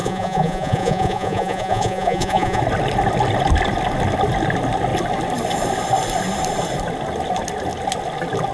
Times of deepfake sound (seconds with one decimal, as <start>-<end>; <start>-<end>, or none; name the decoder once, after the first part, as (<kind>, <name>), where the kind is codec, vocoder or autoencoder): 0.0-2.6 (vocoder, Vocos)